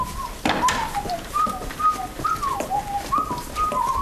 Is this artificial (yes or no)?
no